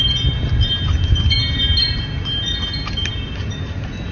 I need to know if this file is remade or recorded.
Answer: recorded